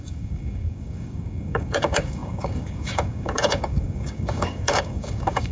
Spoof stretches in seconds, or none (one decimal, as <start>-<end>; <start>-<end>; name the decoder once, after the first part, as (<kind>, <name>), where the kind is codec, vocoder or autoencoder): 0.0-5.5 (codec, DAC)